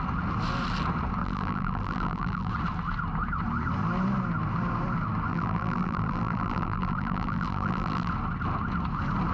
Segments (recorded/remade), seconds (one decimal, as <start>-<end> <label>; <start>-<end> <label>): 0.0-1.2 recorded; 1.2-2.5 remade; 2.5-5.3 recorded; 5.3-8.1 remade; 8.1-9.3 recorded